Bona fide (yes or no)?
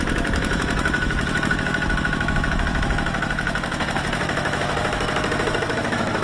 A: no